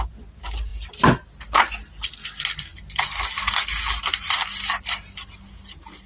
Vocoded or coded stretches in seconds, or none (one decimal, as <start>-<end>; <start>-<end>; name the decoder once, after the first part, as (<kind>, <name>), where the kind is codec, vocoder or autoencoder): none